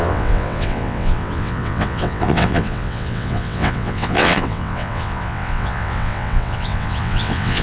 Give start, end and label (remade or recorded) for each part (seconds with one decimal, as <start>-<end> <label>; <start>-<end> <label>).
0.0-7.6 remade

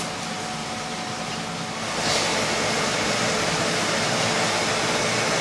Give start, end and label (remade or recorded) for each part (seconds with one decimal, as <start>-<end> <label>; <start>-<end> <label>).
0.0-0.6 recorded; 0.6-1.4 remade; 1.4-5.4 recorded

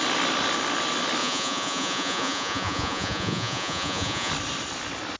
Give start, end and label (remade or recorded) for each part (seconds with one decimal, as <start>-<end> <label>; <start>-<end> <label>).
0.0-1.2 recorded; 1.2-4.3 remade; 4.3-5.2 recorded

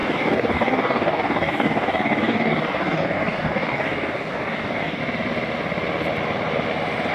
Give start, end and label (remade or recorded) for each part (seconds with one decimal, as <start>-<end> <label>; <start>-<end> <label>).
0.0-5.0 remade; 5.0-7.1 recorded